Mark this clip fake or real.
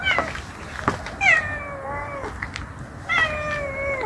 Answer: real